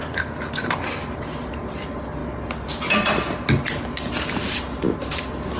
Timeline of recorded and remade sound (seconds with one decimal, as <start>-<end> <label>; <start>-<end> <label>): 0.0-5.6 recorded